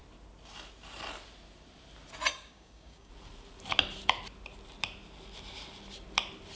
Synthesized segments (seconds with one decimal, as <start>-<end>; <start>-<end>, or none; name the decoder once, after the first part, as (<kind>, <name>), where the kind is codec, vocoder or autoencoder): 2.3-3.1 (codec, DAC)